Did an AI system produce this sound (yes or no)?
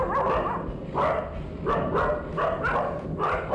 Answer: no